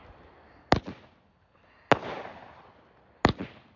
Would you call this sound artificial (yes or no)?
no